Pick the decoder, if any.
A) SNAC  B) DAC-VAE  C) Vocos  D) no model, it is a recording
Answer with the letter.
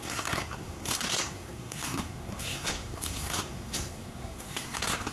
A